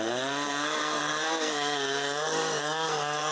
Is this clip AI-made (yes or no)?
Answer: yes